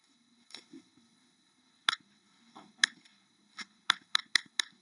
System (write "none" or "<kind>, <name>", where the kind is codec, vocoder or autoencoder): codec, HILCodec